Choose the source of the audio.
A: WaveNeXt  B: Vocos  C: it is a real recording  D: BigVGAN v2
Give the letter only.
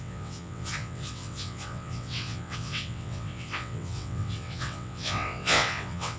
A